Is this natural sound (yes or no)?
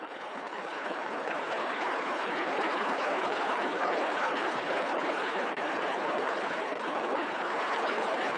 no